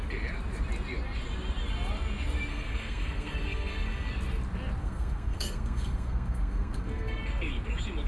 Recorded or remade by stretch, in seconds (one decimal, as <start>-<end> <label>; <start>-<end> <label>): 0.0-2.5 recorded; 2.5-4.1 remade; 4.1-4.8 recorded; 4.8-7.2 remade; 7.2-8.1 recorded